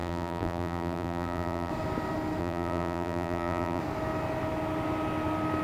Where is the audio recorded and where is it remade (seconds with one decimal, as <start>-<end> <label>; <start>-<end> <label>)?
0.0-1.7 remade; 1.7-2.4 recorded; 2.4-3.8 remade; 3.8-5.6 recorded